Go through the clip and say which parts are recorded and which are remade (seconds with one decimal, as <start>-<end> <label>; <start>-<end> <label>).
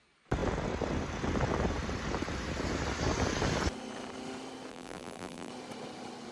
0.0-4.7 recorded; 4.7-5.5 remade; 5.5-6.3 recorded